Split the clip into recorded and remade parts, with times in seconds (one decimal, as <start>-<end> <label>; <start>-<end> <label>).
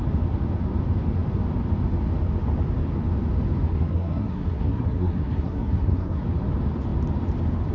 0.0-3.7 recorded; 3.7-6.2 remade; 6.2-7.7 recorded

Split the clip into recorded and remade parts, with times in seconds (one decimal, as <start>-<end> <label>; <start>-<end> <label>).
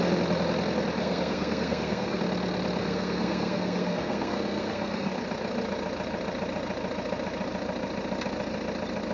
0.0-1.0 recorded; 1.0-2.2 remade; 2.2-2.8 recorded; 2.8-5.1 remade; 5.1-9.1 recorded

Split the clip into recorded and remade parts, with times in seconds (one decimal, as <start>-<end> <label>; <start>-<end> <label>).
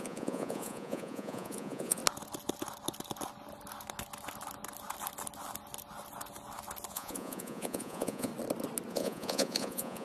0.0-2.0 remade; 2.0-6.9 recorded; 6.9-8.3 remade; 8.3-8.9 recorded; 8.9-10.0 remade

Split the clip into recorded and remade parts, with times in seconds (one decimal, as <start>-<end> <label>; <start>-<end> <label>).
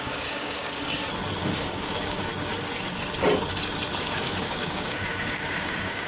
0.0-1.0 remade; 1.0-1.6 recorded; 1.6-2.3 remade; 2.3-4.0 recorded; 4.0-6.1 remade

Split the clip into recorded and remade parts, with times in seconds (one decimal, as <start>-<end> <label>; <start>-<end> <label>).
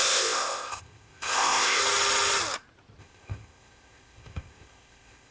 0.0-1.8 remade; 1.8-3.0 recorded; 3.0-5.3 remade